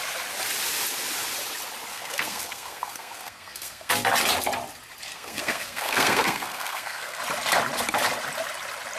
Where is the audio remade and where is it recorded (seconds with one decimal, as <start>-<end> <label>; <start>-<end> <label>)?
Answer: 0.0-1.9 recorded; 1.9-3.9 remade; 3.9-5.1 recorded; 5.1-7.2 remade; 7.2-9.0 recorded